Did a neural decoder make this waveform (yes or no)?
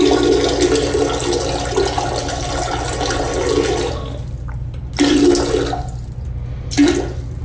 no